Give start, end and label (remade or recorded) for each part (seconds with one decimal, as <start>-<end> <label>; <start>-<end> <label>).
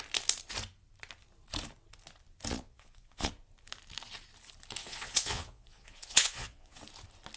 0.0-2.5 recorded; 2.5-3.3 remade; 3.3-4.8 recorded; 4.8-6.8 remade; 6.8-7.4 recorded